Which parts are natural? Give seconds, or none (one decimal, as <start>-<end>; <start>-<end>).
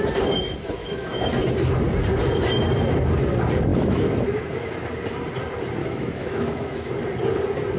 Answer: 0.0-0.8; 1.4-3.7; 4.7-5.8; 6.9-7.8